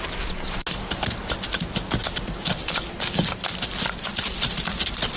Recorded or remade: recorded